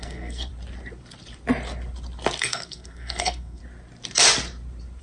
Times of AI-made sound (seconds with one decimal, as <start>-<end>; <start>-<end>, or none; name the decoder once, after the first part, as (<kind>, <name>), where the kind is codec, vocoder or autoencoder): 0.0-0.5 (codec, SNAC); 2.4-3.6